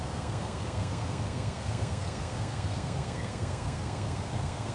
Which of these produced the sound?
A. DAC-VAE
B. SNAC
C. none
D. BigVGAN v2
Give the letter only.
B